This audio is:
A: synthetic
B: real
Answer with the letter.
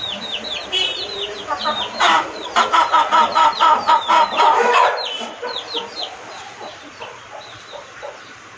A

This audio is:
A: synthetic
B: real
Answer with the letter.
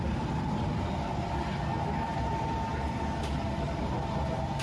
A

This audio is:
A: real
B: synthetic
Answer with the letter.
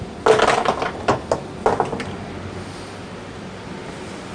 A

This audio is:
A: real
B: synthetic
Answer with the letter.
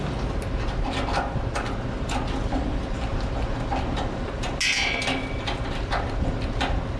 A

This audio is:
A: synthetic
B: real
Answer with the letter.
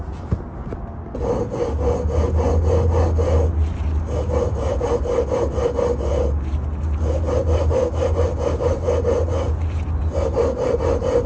B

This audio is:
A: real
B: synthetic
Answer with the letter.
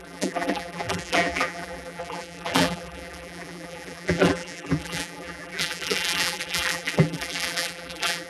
B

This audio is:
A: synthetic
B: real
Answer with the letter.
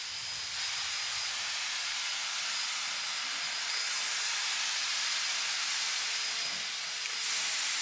B